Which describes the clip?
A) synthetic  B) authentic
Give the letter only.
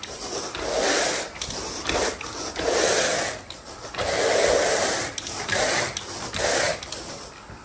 B